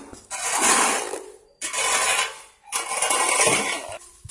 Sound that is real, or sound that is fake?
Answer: real